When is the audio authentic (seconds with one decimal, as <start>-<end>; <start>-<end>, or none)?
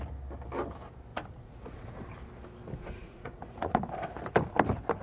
0.0-1.1; 2.0-3.0; 3.8-5.0